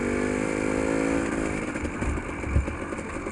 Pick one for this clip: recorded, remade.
recorded